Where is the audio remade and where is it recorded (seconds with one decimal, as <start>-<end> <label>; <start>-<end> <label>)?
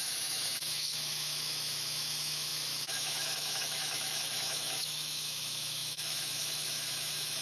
0.0-7.4 remade